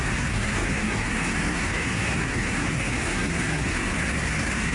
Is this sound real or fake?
fake